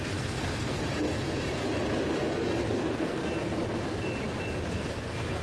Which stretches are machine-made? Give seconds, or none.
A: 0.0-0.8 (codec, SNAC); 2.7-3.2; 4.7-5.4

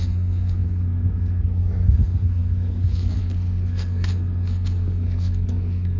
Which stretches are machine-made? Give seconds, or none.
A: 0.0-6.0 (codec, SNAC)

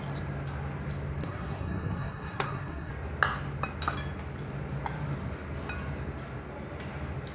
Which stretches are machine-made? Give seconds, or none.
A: 1.2-2.9 (codec, SNAC)

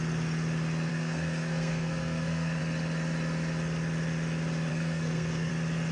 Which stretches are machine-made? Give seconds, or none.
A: 0.9-2.6 (codec, SNAC); 4.7-5.5

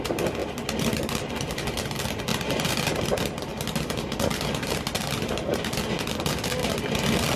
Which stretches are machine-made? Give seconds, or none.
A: 0.4-1.3 (vocoder, BigVGAN v2); 2.3-3.0; 3.5-5.5

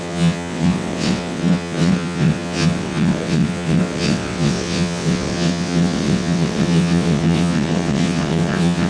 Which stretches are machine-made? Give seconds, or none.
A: 0.0-8.9 (vocoder, WaveNeXt)